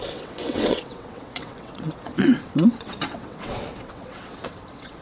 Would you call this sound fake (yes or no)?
yes